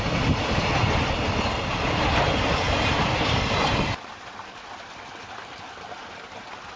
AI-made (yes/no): no